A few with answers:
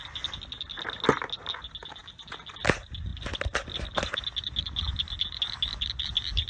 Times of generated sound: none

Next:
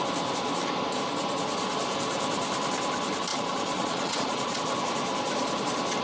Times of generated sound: 3.3-4.6 (vocoder, Vocos)